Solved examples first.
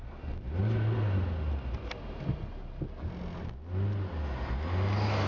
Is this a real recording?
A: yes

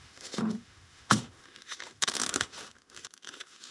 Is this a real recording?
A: no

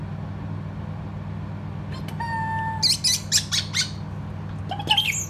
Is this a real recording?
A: yes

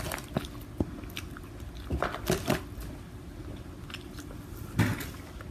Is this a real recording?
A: yes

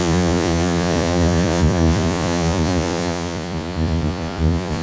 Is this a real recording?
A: no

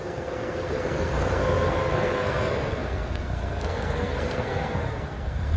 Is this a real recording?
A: no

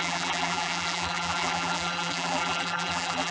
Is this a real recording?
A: no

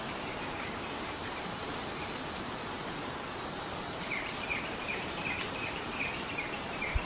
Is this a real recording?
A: no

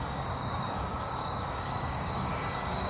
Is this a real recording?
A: no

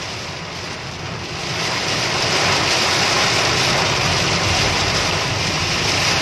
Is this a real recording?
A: yes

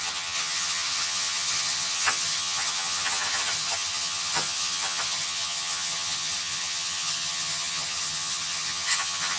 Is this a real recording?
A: no